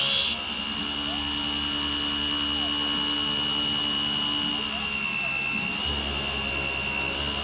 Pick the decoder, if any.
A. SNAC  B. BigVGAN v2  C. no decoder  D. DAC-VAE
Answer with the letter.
C